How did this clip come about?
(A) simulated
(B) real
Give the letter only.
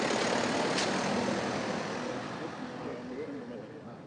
B